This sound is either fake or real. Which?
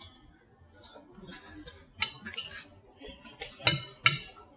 real